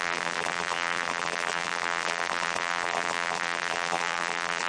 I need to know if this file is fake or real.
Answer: fake